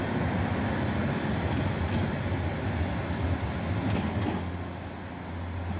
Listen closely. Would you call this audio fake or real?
real